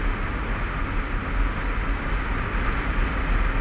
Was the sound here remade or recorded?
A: recorded